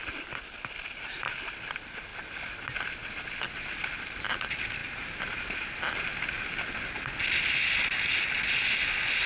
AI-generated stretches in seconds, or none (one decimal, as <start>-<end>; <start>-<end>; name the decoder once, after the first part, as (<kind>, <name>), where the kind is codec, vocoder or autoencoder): none